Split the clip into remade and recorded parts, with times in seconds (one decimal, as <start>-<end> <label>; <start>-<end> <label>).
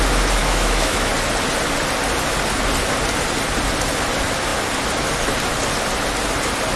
0.0-0.4 recorded; 0.4-1.1 remade; 1.1-6.8 recorded